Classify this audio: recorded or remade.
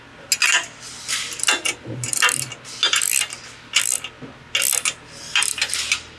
recorded